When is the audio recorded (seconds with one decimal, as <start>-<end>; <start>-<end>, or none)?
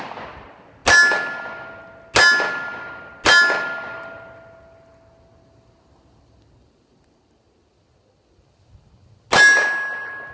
0.0-10.3